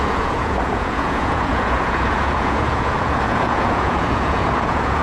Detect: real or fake fake